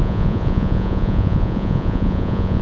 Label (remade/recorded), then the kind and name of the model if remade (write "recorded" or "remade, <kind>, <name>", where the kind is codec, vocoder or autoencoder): remade, vocoder, Vocos